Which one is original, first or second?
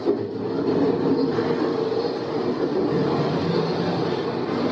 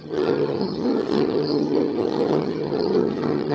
first